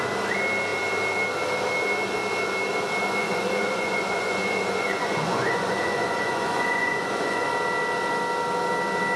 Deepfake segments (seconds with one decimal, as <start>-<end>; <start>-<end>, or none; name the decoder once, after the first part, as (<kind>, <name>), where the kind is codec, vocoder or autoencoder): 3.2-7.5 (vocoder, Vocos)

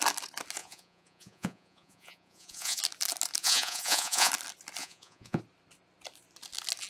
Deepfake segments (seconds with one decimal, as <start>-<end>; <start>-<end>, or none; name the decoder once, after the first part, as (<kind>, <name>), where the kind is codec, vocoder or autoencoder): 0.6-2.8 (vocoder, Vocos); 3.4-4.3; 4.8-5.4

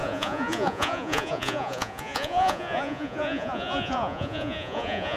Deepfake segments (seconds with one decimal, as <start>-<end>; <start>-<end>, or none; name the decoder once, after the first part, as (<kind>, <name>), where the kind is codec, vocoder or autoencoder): 0.0-5.2 (vocoder, Vocos)

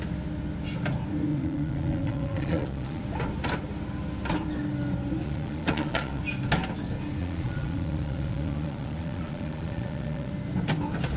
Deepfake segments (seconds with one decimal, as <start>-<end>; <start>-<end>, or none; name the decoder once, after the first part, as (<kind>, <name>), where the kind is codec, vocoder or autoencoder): 1.3-3.0 (vocoder, Vocos); 5.2-6.2; 7.2-10.3

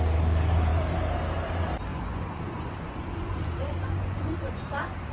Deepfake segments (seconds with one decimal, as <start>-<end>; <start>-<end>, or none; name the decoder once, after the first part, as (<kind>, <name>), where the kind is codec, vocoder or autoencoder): 1.9-5.1 (vocoder, Vocos)